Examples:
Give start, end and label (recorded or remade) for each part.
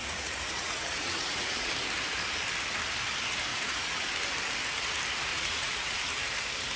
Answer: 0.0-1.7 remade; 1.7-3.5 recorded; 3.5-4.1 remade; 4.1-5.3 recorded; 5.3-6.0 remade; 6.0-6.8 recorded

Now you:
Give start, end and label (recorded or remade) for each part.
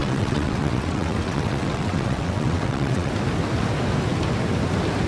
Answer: 0.0-3.1 remade; 3.1-5.1 recorded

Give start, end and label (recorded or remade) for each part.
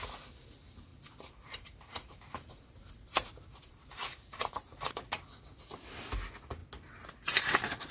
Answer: 0.0-0.9 recorded; 0.9-4.9 remade; 4.9-7.9 recorded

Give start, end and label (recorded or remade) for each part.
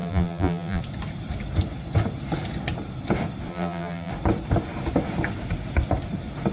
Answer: 0.0-0.8 remade; 0.8-3.5 recorded; 3.5-4.1 remade; 4.1-6.5 recorded